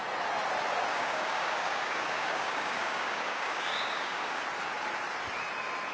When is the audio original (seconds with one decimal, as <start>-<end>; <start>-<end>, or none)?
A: 0.0-0.9; 4.4-5.9